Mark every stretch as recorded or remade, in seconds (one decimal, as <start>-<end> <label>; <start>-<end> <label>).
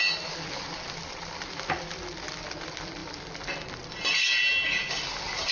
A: 0.0-5.5 recorded